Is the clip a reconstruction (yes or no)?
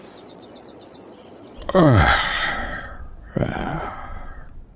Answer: yes